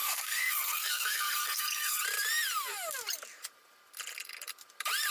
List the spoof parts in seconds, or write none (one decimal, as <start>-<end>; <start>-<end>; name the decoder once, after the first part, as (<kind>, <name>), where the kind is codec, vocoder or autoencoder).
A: 0.0-2.0 (codec, SNAC)